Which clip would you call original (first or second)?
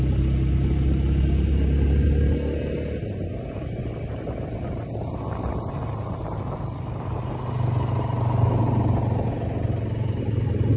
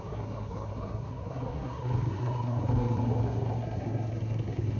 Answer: first